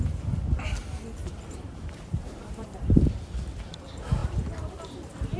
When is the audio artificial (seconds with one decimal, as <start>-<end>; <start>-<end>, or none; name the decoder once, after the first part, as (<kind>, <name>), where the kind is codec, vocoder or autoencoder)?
1.2-3.2 (vocoder, BigVGAN v2); 4.2-5.4